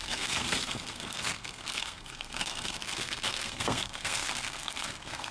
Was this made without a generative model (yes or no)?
no